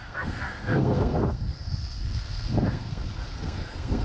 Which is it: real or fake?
fake